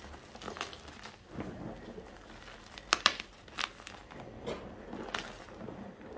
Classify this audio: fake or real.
real